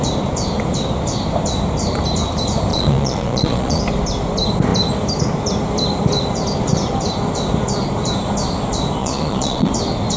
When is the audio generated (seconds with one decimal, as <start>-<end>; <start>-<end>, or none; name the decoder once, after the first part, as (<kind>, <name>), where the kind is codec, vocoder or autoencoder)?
2.7-3.8 (vocoder, Vocos); 9.0-9.7